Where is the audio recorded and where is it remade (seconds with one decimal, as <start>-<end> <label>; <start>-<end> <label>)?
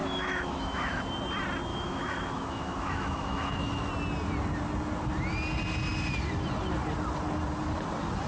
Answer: 0.0-1.0 remade; 1.0-1.7 recorded; 1.7-3.9 remade; 3.9-8.3 recorded